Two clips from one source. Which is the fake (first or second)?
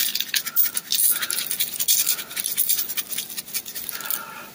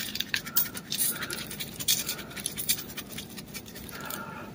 second